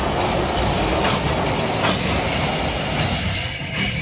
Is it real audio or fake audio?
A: real